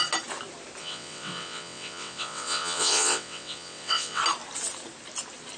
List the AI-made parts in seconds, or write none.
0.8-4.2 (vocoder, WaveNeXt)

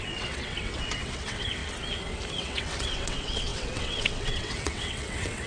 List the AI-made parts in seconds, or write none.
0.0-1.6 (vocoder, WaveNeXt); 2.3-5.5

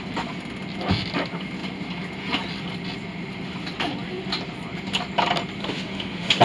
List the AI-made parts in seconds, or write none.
5.6-6.4 (autoencoder, DAC-VAE)